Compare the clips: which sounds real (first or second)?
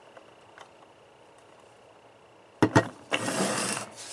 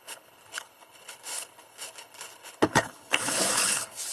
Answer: first